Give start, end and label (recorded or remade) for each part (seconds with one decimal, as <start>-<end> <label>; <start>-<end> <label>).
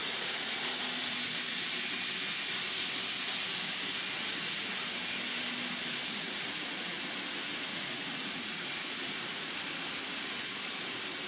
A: 0.0-0.6 remade; 0.6-6.0 recorded; 6.0-7.1 remade; 7.1-7.7 recorded; 7.7-9.5 remade; 9.5-11.3 recorded